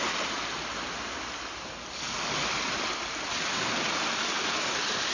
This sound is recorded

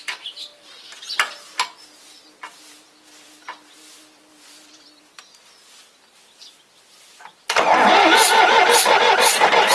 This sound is recorded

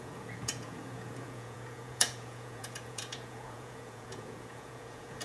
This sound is remade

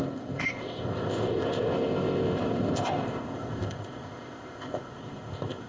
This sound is remade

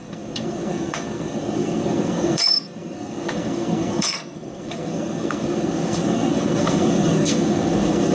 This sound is remade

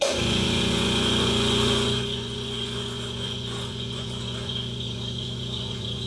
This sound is remade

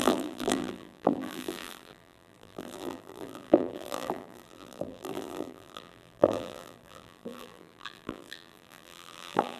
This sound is remade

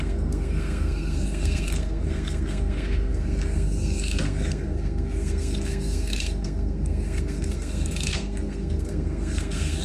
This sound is remade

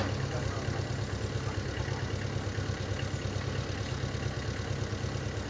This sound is recorded